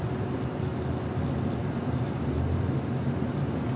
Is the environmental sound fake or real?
real